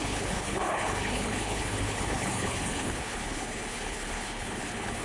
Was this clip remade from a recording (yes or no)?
yes